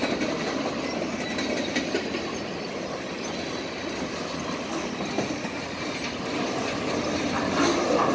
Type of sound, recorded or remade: recorded